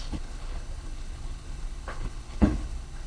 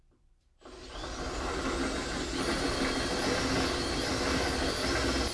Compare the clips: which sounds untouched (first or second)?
second